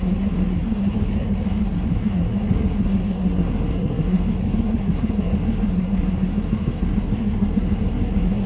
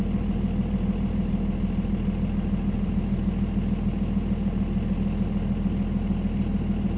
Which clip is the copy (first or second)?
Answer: first